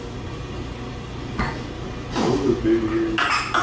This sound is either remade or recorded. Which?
recorded